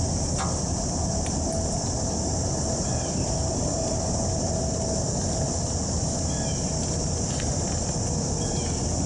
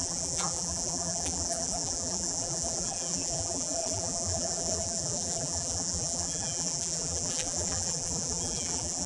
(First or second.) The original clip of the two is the first